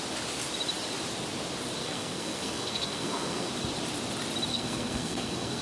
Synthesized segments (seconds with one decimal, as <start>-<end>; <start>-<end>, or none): 1.8-3.5; 4.5-5.6